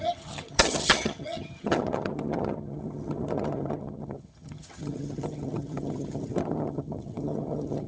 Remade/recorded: remade